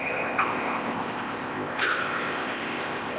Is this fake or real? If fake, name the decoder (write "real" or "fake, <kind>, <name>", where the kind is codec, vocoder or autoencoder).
fake, codec, ZipCodec